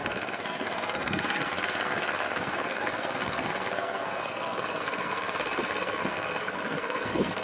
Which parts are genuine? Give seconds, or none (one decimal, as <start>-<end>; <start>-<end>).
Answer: none